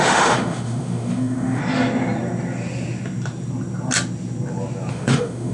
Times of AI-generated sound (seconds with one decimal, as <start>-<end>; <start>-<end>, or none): 0.0-1.6; 4.9-5.5